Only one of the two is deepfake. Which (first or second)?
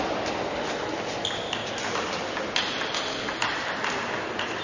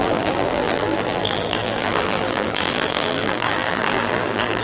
second